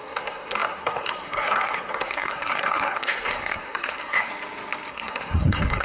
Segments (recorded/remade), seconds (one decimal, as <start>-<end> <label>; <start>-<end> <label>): 0.0-4.3 remade; 4.3-4.9 recorded; 4.9-5.8 remade